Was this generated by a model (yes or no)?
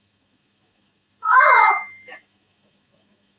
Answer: yes